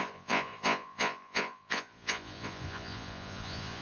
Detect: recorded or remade remade